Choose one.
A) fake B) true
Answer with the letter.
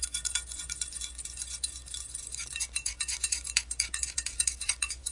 A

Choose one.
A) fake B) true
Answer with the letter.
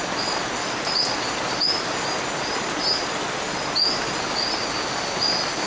B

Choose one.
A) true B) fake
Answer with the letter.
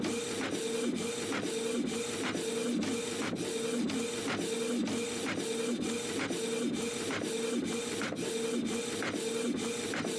A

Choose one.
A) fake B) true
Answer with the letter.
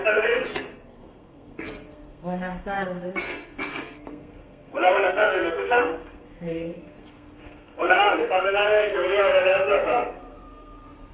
A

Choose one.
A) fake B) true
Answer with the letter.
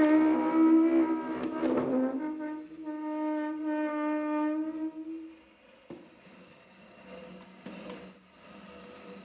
B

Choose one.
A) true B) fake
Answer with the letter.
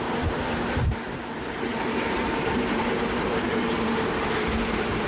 B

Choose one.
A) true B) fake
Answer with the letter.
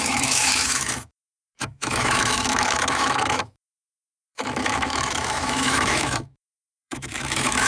B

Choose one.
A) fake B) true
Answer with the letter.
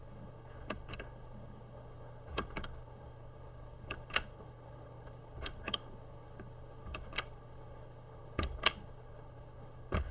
A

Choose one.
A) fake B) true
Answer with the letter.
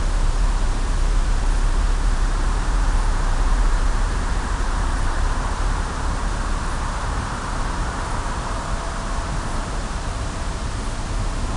A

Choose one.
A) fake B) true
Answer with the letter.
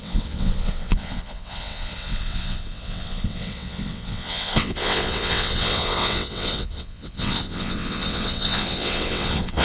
A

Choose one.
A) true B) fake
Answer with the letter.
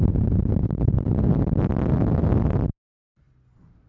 A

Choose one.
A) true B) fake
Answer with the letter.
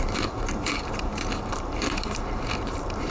B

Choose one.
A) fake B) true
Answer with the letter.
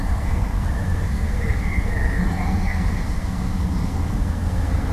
A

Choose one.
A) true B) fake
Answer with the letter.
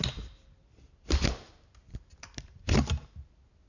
A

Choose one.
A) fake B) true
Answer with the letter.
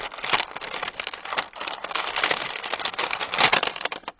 B